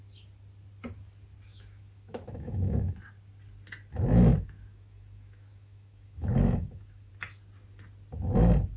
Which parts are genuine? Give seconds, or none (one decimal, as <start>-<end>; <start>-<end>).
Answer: 0.0-1.5; 3.0-4.3; 7.1-8.8